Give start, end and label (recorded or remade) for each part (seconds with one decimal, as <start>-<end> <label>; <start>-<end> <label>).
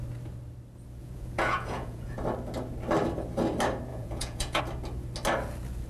0.0-1.0 recorded; 1.0-2.2 remade; 2.2-3.9 recorded; 3.9-4.6 remade; 4.6-5.9 recorded